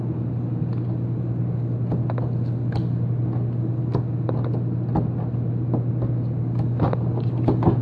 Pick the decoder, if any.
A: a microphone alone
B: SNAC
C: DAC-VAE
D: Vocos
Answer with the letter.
A